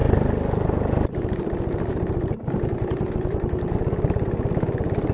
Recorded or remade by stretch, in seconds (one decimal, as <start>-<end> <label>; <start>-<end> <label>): 0.0-5.1 recorded